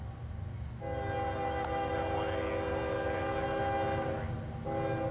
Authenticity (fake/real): real